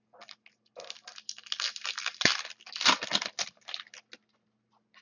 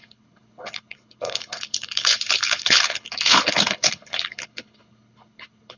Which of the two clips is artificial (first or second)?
second